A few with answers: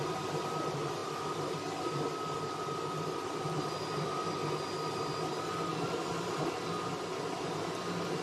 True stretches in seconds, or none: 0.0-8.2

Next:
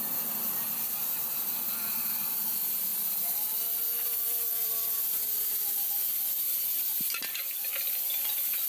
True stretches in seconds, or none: 0.0-8.7